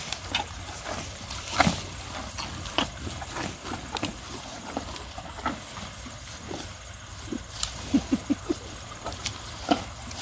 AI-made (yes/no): no